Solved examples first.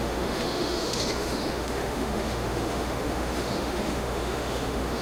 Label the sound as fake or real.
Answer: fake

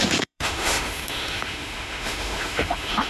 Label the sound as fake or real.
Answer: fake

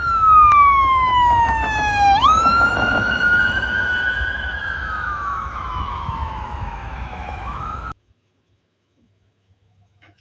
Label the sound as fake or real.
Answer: fake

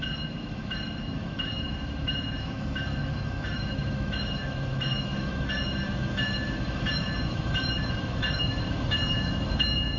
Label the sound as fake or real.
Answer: fake